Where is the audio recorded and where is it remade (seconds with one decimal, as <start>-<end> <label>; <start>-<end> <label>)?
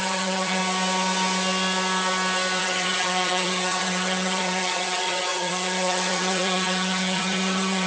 0.0-0.6 remade; 0.6-2.6 recorded; 2.6-7.9 remade